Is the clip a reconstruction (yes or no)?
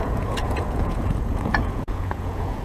yes